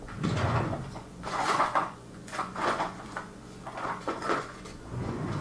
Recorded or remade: remade